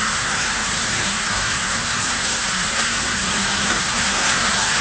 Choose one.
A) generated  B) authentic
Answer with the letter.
A